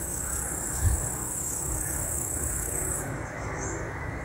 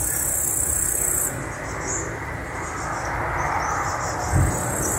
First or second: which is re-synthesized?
first